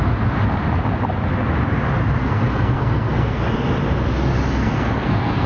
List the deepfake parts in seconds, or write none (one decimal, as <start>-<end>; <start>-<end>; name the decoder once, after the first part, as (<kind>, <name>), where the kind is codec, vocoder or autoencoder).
2.2-3.4 (codec, SNAC); 4.6-5.5